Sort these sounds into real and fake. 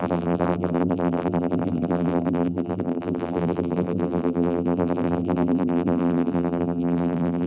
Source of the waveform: fake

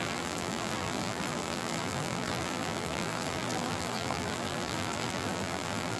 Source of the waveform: fake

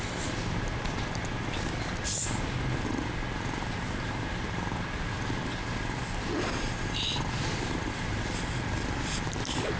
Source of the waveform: real